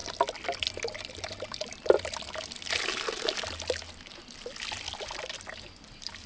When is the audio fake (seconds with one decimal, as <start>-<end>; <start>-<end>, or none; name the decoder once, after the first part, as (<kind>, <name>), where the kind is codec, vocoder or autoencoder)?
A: none